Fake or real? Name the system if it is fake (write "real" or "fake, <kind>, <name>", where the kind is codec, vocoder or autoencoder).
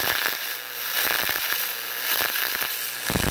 real